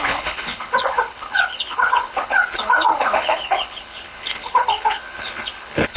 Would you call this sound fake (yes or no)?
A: yes